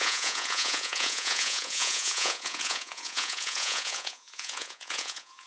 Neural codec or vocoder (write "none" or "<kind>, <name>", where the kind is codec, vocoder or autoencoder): vocoder, Vocos